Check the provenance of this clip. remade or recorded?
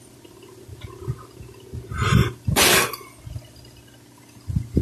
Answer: recorded